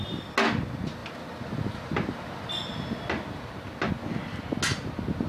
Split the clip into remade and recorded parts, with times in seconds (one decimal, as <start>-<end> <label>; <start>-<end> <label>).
0.0-5.3 recorded